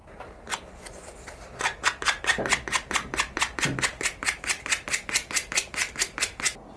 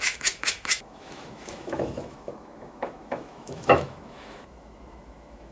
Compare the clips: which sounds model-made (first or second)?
second